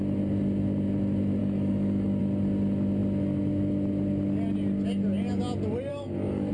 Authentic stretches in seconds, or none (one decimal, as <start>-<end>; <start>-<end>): 0.0-1.4; 2.2-5.9